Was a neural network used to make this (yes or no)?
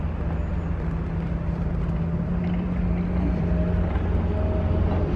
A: no